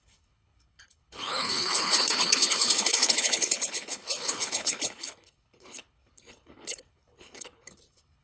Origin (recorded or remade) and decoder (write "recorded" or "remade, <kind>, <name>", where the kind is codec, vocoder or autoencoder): remade, codec, HILCodec